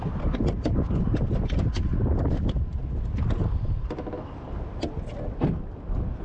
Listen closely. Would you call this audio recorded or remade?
recorded